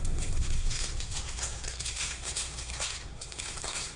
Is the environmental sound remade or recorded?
remade